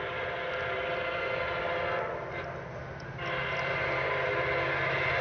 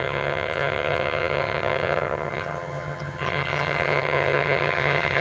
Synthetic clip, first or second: second